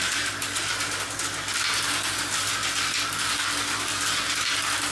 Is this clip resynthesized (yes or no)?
no